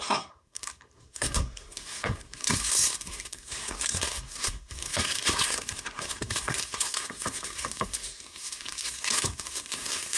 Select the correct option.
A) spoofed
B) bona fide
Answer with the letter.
A